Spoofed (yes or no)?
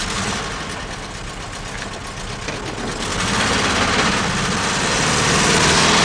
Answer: no